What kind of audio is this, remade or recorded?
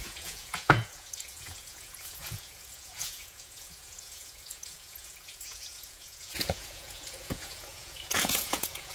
remade